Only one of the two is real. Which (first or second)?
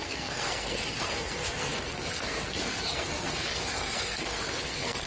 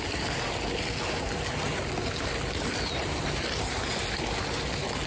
second